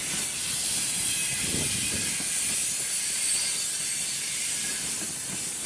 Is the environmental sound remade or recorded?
recorded